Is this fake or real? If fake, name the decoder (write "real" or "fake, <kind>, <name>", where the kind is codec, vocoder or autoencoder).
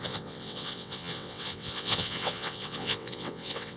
fake, vocoder, WaveNeXt